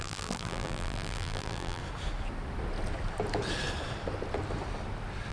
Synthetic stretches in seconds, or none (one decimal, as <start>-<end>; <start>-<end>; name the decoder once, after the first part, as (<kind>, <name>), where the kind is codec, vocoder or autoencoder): 0.0-1.8 (vocoder, BigVGAN v2)